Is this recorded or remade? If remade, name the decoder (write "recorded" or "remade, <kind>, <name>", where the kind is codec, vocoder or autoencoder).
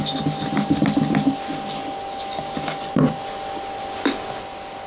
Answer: recorded